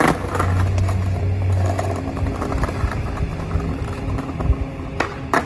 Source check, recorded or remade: recorded